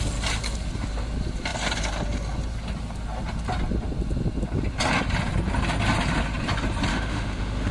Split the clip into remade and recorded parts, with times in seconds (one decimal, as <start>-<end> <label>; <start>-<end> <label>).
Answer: 0.0-6.9 recorded; 6.9-7.7 remade